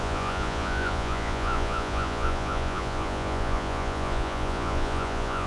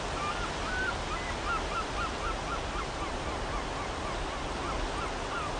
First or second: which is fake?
first